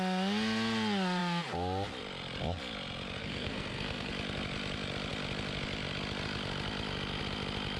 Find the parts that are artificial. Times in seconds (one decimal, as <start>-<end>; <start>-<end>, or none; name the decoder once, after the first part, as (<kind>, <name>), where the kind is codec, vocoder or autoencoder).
3.2-4.1 (codec, SNAC)